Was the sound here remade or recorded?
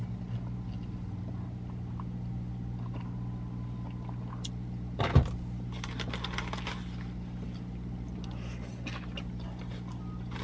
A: recorded